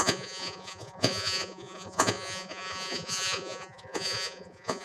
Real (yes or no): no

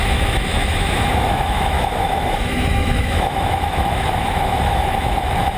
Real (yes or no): no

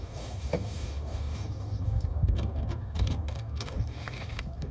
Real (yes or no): no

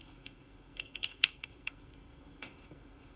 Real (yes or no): no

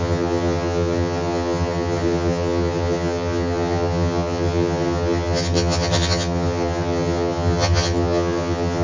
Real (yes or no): no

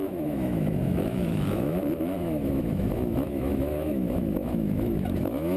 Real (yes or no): no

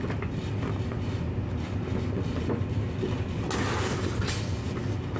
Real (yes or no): yes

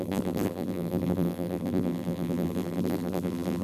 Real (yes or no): no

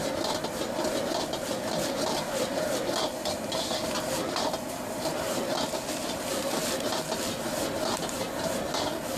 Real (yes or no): yes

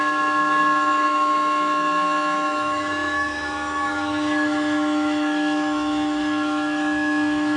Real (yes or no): no